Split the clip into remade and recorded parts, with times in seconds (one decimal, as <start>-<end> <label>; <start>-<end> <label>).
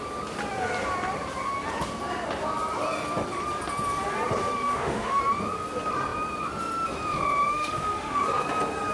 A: 0.0-4.4 recorded; 4.4-5.2 remade; 5.2-7.5 recorded; 7.5-8.2 remade; 8.2-8.9 recorded